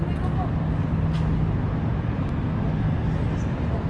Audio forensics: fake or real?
real